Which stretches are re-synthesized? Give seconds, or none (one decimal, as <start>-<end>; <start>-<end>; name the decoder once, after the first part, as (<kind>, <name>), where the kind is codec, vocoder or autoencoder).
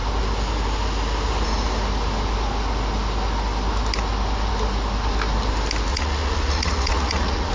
5.9-7.5 (vocoder, Vocos)